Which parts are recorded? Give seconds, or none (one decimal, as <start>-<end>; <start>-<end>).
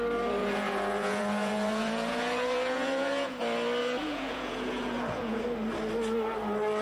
0.0-0.4; 3.4-3.8; 5.4-6.8